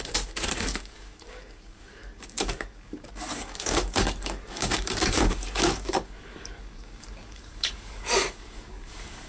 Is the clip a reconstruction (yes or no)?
yes